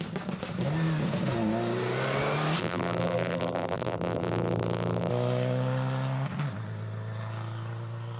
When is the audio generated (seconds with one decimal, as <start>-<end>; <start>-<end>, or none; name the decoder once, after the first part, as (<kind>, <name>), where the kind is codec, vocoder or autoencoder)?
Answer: 2.6-5.1 (vocoder, BigVGAN v2)